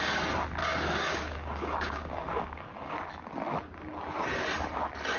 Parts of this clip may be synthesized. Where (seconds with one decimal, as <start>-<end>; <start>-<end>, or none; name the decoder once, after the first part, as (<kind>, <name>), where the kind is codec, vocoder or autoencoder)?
0.6-2.9 (codec, DAC)